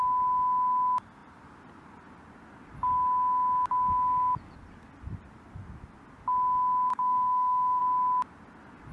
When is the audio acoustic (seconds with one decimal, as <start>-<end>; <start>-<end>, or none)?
0.0-6.9; 7.8-8.9